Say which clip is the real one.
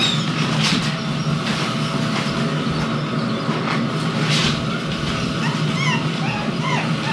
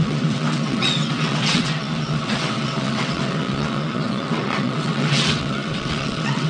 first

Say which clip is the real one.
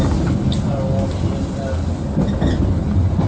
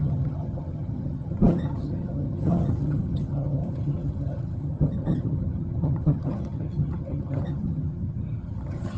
first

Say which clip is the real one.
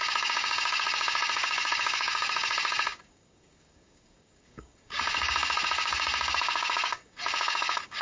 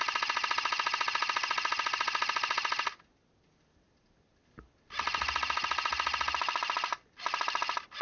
second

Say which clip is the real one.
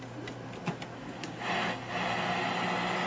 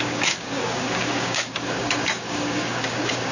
first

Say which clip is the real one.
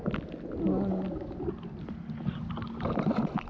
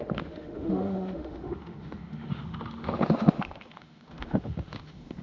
first